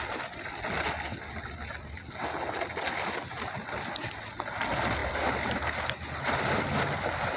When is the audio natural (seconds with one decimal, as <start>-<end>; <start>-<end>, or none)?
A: 0.0-7.4

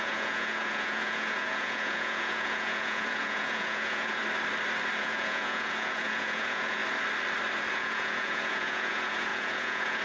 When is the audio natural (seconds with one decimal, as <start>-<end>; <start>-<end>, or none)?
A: 4.2-5.0; 6.8-7.7